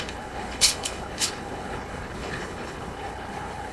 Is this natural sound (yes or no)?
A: no